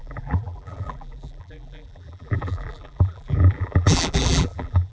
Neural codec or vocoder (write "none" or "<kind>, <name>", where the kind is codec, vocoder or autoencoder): vocoder, BigVGAN v2